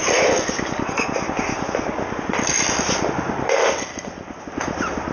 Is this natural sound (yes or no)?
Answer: yes